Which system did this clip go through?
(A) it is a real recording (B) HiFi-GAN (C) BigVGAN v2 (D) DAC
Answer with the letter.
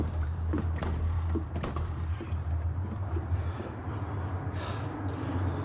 A